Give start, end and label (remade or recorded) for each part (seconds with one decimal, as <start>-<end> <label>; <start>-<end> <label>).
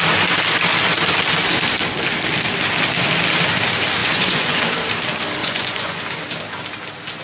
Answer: 0.0-4.0 recorded; 4.0-4.6 remade; 4.6-5.4 recorded; 5.4-6.0 remade; 6.0-7.2 recorded